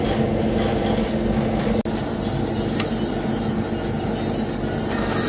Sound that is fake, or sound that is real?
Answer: real